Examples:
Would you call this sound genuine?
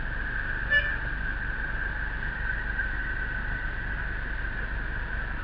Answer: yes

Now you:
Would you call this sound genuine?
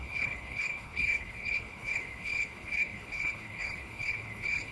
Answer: no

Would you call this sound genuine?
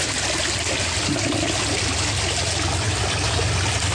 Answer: yes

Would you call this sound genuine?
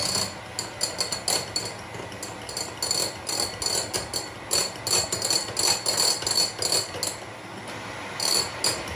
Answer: yes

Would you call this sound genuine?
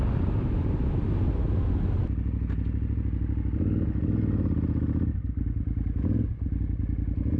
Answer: yes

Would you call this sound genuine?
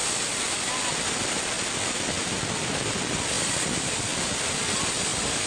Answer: yes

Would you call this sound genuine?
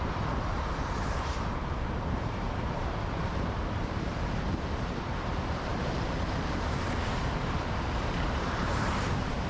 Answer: no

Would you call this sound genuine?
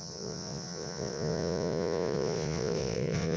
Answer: no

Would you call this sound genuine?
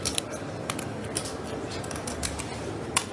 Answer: no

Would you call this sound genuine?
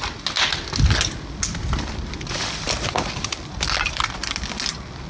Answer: yes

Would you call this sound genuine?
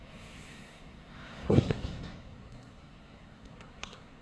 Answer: no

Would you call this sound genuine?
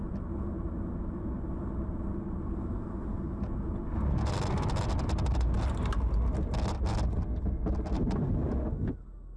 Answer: yes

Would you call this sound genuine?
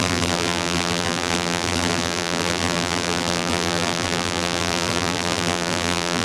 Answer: no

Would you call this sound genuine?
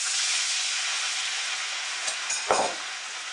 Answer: no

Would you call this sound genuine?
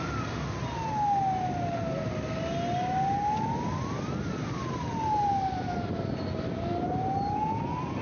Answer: yes